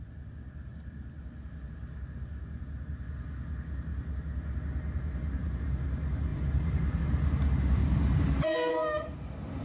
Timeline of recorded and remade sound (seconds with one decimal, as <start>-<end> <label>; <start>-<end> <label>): 0.0-6.3 recorded; 6.3-9.1 remade; 9.1-9.6 recorded